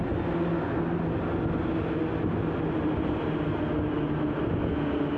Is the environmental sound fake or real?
real